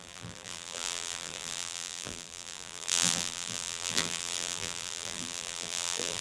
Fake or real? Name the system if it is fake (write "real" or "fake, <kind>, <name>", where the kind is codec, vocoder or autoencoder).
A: fake, vocoder, BigVGAN v2